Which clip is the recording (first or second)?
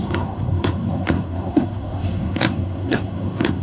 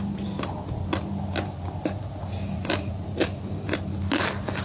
second